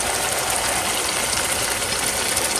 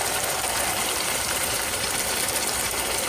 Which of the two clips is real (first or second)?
first